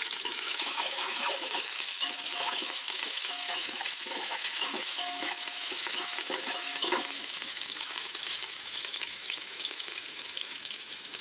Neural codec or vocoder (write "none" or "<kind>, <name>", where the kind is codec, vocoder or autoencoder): autoencoder, DAC-VAE